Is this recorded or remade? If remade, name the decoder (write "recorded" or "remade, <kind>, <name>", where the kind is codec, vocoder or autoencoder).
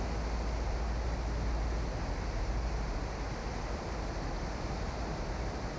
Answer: recorded